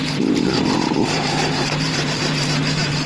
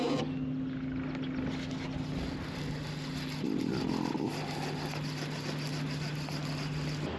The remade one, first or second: first